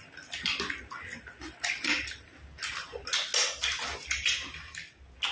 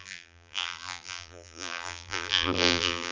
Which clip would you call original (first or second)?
first